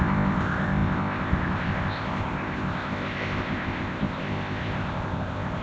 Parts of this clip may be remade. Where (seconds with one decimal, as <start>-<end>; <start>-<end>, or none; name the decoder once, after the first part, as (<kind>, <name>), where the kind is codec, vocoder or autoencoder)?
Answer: 0.0-5.6 (codec, ZipCodec)